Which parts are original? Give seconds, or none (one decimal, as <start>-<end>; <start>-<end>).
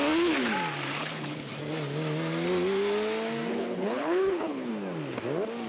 0.0-1.0; 1.5-3.5; 4.7-5.7